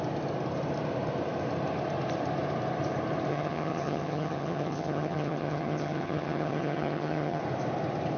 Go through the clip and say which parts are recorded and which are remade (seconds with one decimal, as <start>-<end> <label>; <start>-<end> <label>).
0.0-3.3 recorded; 3.3-7.4 remade; 7.4-8.2 recorded